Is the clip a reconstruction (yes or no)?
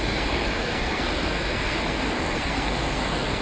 yes